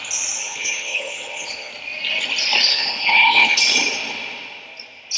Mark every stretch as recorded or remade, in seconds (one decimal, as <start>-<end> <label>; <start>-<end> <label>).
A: 0.0-0.4 recorded; 0.4-1.7 remade; 1.7-2.7 recorded; 2.7-3.6 remade; 3.6-5.2 recorded